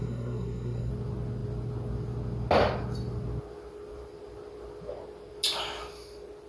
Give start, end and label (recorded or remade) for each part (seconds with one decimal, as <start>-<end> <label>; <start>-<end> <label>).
0.0-0.9 remade; 0.9-6.5 recorded